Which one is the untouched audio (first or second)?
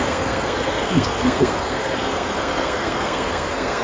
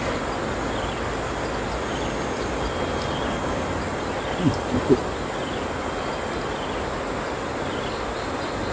second